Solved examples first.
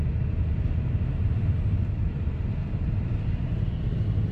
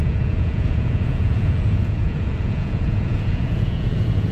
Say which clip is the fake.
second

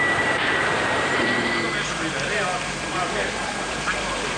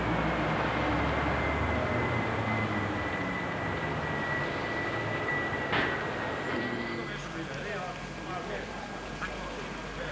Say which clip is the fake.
first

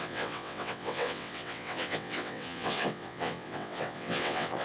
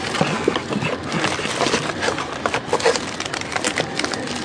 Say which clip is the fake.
first